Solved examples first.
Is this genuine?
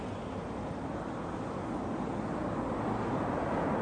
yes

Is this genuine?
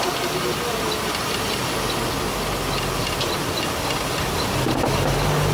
yes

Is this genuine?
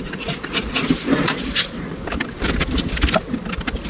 yes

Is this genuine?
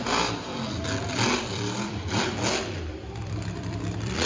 no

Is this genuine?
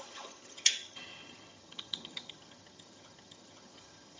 no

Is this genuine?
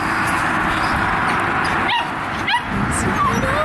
yes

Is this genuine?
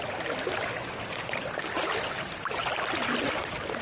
yes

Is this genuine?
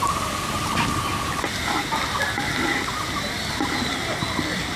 yes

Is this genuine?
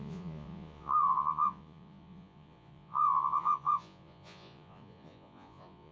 no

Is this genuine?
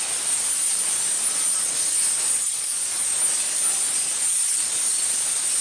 yes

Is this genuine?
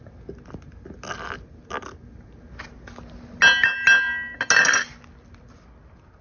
yes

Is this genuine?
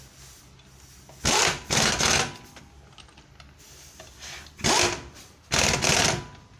yes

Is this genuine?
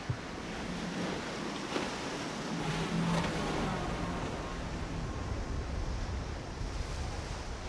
yes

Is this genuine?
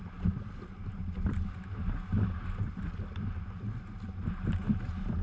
yes